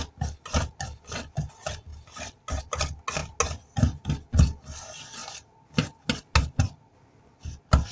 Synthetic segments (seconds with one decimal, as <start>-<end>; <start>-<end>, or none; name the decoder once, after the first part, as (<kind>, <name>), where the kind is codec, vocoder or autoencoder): none